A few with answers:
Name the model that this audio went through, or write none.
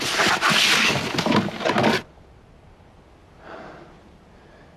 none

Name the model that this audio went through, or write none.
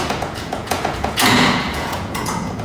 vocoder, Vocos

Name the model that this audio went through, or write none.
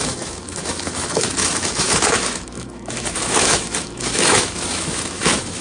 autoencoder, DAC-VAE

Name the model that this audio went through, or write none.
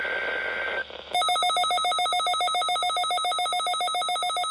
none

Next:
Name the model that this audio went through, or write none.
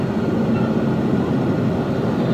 none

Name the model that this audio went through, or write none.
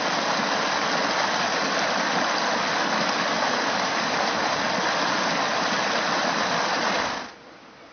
none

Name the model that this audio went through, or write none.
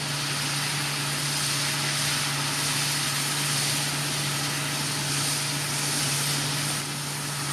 none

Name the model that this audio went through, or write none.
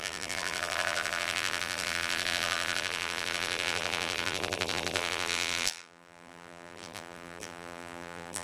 vocoder, BigVGAN v2